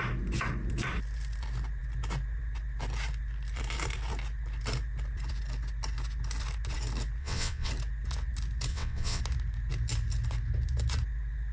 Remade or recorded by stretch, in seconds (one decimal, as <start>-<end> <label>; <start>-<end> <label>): 0.0-7.2 recorded; 7.2-7.7 remade; 7.7-8.7 recorded; 8.7-9.2 remade; 9.2-11.5 recorded